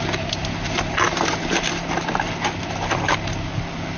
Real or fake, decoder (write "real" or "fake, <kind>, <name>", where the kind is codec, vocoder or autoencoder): real